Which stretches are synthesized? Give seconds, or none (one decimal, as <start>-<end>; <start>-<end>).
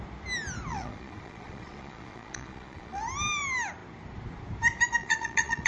0.7-3.0; 5.0-5.7